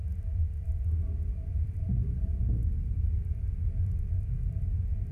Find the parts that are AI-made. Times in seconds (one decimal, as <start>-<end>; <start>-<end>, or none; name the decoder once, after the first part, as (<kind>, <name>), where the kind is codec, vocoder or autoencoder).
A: 1.5-3.4 (vocoder, BigVGAN v2)